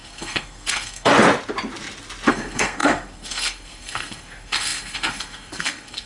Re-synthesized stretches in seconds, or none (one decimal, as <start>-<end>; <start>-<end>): 0.0-1.1; 2.3-6.1